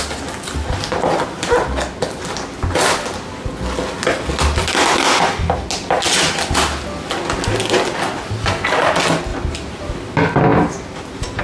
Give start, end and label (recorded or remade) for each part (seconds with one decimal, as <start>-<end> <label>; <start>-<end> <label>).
0.0-9.3 recorded; 9.3-9.9 remade; 9.9-10.5 recorded; 10.5-11.4 remade